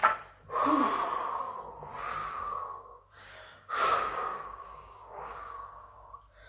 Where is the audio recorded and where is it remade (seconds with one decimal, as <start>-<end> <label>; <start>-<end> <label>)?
0.0-2.2 recorded; 2.2-6.1 remade; 6.1-6.5 recorded